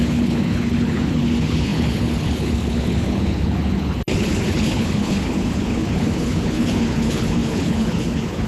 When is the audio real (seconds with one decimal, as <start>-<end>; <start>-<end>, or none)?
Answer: none